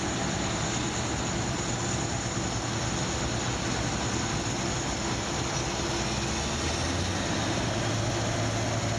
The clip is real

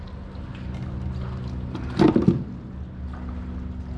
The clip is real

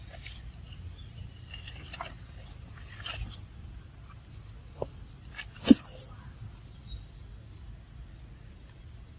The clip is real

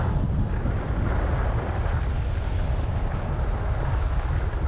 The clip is real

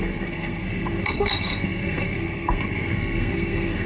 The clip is fake